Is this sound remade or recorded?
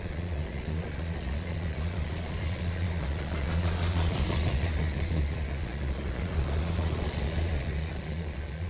remade